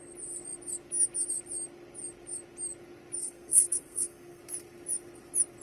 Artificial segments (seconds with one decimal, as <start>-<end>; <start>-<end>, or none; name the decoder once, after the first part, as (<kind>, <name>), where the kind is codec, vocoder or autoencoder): 3.2-4.4 (codec, SNAC)